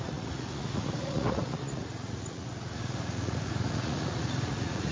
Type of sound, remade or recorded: remade